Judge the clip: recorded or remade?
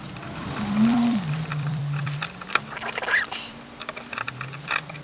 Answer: remade